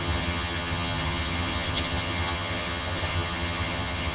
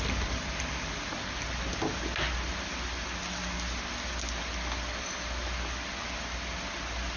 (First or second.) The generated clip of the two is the first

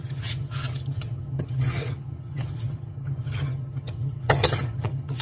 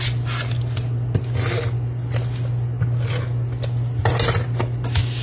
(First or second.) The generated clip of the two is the first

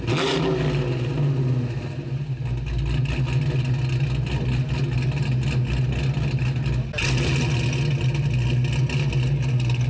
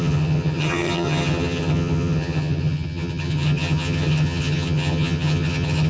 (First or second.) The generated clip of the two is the second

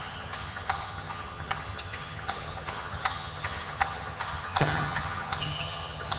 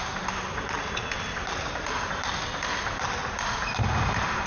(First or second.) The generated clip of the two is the first